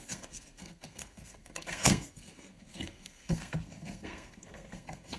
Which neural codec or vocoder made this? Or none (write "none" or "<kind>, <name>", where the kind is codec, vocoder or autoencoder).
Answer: codec, SNAC